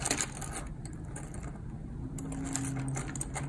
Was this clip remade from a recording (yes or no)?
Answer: no